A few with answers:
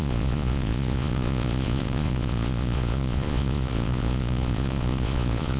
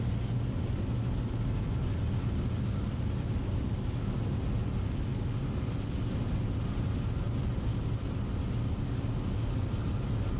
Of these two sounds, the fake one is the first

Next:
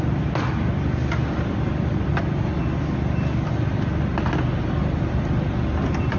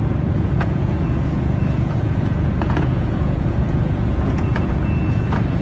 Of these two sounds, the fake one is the second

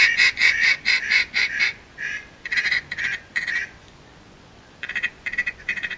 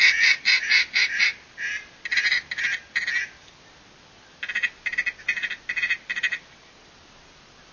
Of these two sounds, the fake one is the first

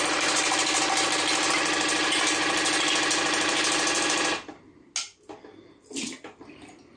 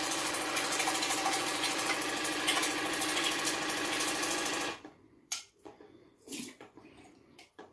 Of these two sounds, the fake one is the second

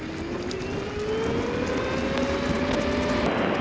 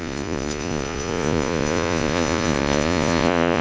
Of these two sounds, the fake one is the second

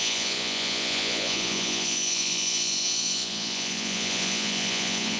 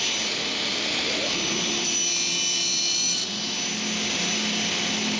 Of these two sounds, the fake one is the first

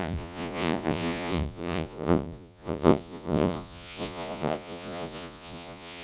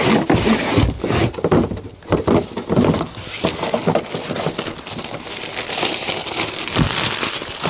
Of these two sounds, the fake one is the first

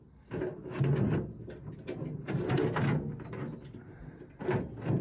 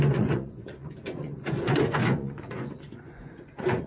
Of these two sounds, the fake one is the second